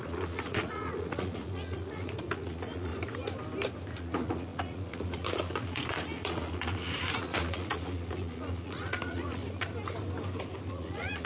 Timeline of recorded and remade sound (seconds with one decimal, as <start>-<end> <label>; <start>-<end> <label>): 0.0-2.9 remade; 2.9-3.9 recorded; 3.9-9.4 remade; 9.4-10.7 recorded; 10.7-11.3 remade